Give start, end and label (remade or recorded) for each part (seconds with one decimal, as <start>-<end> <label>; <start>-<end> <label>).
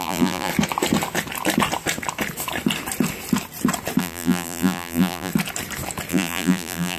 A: 0.0-0.5 remade; 0.5-4.0 recorded; 4.0-5.3 remade; 5.3-6.1 recorded; 6.1-7.0 remade